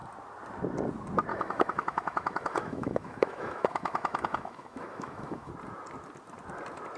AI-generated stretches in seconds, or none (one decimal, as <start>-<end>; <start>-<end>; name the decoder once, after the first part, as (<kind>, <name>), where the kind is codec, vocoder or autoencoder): 1.3-5.5 (autoencoder, DAC-VAE)